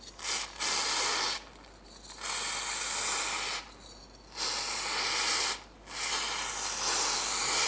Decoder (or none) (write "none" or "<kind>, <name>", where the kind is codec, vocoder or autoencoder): none